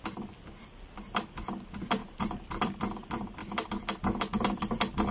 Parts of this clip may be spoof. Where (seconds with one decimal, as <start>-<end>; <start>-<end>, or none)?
2.0-2.8